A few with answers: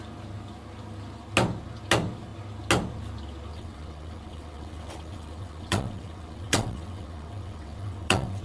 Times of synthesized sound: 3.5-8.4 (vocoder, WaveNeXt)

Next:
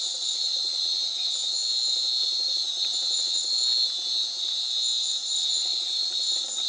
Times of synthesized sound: 0.0-1.6 (vocoder, BigVGAN v2); 2.2-3.5; 5.0-6.7

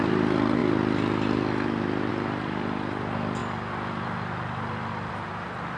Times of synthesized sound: none

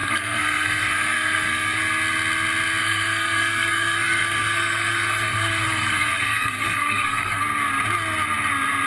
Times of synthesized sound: 0.0-1.8 (codec, SNAC); 2.8-7.4

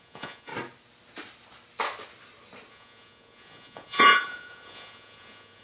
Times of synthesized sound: 0.0-0.5 (vocoder, Vocos); 2.7-5.6